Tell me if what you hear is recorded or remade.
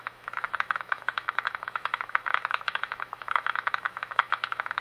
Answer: remade